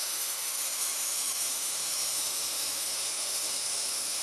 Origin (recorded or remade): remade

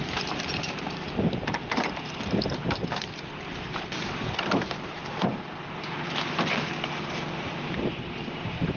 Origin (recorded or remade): remade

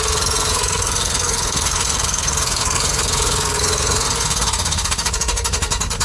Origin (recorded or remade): remade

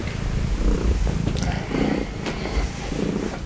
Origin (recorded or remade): remade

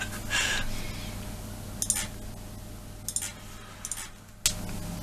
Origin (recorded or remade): recorded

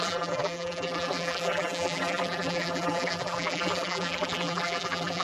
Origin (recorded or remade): remade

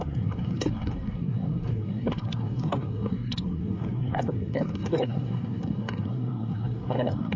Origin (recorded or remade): remade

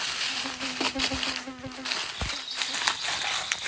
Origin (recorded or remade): recorded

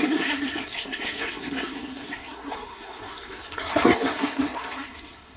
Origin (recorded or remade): remade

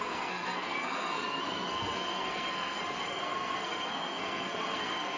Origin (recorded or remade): remade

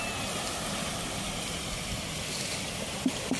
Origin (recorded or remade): recorded